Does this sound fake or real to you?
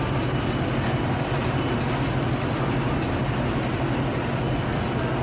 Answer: real